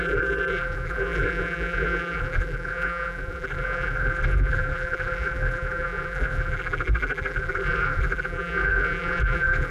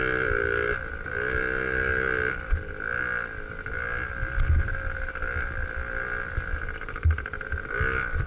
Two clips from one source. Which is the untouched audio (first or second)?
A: second